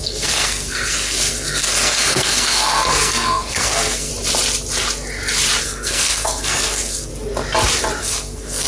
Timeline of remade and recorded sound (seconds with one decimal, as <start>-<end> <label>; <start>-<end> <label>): 0.0-4.1 remade; 4.1-5.6 recorded; 5.6-7.1 remade; 7.1-8.0 recorded; 8.0-8.7 remade